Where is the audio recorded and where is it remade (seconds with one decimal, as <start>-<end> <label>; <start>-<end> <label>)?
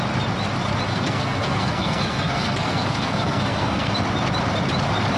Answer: 0.0-0.9 recorded; 0.9-3.9 remade; 3.9-5.2 recorded